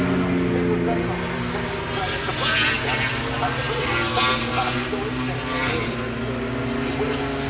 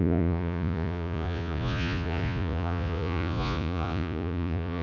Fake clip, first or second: second